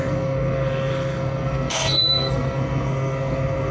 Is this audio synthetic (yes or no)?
yes